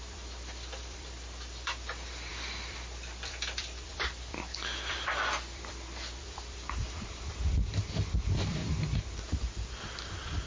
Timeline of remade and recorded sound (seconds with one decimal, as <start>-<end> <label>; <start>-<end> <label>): 0.0-8.6 remade; 8.6-9.2 recorded; 9.2-10.5 remade